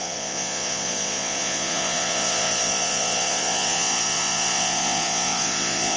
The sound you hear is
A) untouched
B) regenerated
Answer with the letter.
B